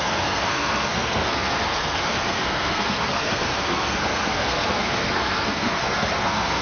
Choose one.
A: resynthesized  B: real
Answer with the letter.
A